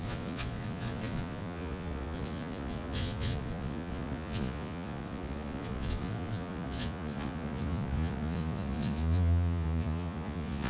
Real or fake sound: fake